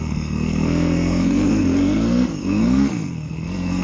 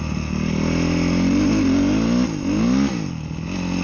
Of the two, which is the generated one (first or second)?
first